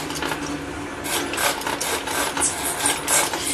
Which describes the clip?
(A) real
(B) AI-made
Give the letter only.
A